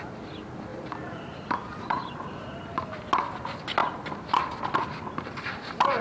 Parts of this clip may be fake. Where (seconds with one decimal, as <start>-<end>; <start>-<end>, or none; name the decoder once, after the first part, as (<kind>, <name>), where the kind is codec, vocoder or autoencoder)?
0.7-2.2 (vocoder, BigVGAN v2)